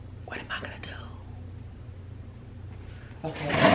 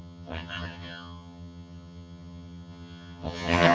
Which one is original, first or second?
first